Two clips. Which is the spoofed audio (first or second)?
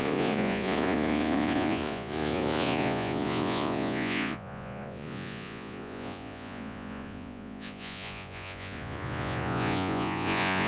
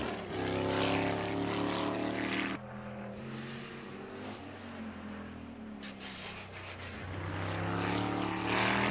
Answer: first